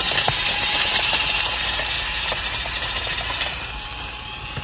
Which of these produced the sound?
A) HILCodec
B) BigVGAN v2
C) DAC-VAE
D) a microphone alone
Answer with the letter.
B